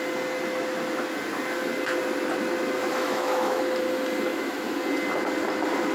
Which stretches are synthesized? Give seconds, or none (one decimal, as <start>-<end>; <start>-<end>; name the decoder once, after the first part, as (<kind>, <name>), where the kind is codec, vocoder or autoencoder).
2.9-3.6 (autoencoder, DAC-VAE); 4.3-4.8